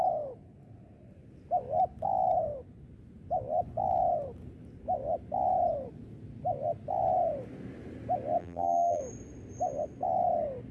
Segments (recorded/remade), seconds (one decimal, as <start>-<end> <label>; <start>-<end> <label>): 0.0-8.4 recorded; 8.4-9.0 remade; 9.0-10.7 recorded